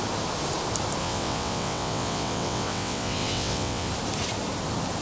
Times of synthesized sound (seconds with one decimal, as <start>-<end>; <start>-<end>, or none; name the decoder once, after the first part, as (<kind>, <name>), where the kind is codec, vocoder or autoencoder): 1.0-3.9 (vocoder, WaveNeXt)